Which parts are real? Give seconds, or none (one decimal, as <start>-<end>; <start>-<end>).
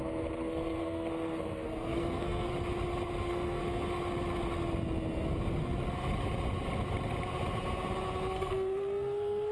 2.5-3.2; 3.6-8.3